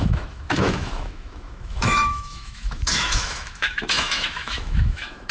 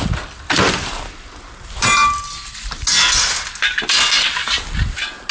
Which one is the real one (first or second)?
second